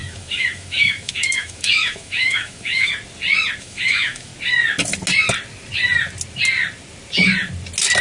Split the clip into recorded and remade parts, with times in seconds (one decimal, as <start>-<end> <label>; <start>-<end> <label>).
0.0-2.9 remade; 2.9-3.6 recorded; 3.6-4.3 remade; 4.3-8.0 recorded